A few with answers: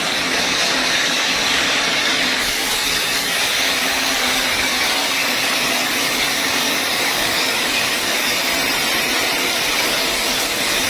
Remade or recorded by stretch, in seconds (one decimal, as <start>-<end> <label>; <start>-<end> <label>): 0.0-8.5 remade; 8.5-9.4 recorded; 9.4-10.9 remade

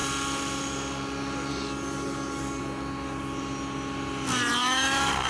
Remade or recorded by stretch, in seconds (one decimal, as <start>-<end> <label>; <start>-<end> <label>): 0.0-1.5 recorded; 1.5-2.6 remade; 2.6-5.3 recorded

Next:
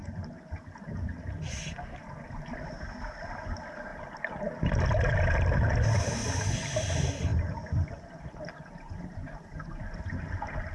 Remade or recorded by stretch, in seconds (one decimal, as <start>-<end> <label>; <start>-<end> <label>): 0.0-10.7 recorded

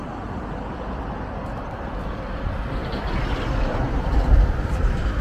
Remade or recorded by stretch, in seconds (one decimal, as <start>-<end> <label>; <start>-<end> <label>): 0.0-5.2 recorded

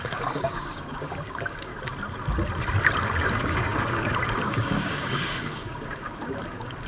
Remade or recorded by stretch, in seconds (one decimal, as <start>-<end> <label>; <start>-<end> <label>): 0.0-1.7 remade; 1.7-3.3 recorded; 3.3-6.9 remade